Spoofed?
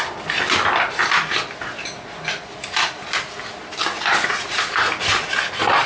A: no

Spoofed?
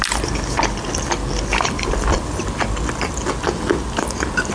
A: no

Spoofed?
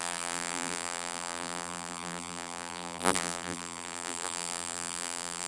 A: yes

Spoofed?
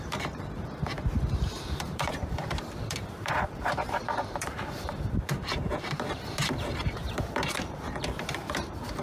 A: yes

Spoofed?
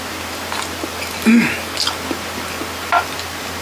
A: no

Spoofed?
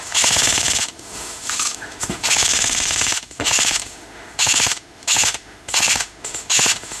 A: yes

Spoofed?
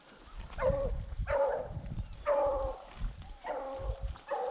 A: no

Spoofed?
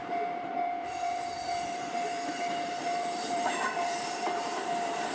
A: yes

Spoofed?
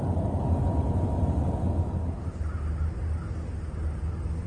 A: no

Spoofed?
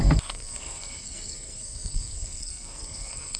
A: yes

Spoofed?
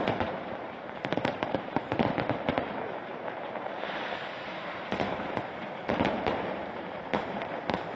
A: yes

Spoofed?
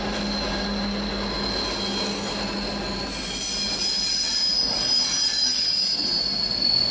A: no